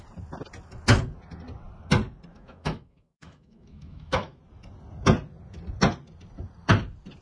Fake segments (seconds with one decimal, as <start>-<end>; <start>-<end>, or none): 2.3-4.4